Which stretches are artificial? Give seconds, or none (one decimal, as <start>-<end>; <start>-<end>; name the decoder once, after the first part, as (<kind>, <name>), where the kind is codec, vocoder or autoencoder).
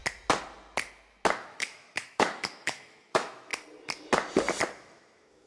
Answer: 1.4-3.5 (autoencoder, DAC-VAE); 4.8-5.5